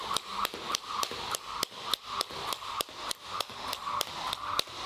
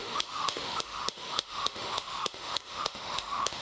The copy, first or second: second